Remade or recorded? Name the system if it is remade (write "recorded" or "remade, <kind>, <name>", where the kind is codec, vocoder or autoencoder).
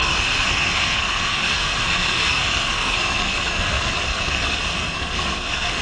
remade, codec, SNAC